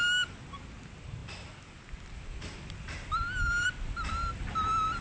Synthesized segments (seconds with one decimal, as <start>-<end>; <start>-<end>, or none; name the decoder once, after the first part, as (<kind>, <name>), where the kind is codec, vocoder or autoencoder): none